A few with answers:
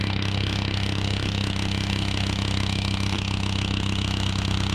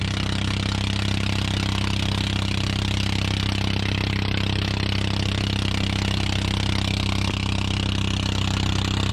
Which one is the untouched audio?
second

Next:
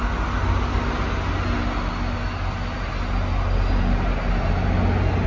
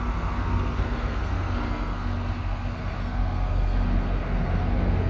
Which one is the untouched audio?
first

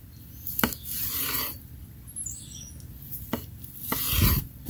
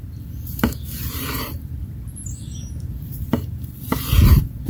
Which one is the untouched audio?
first